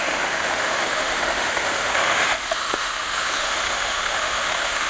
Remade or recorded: remade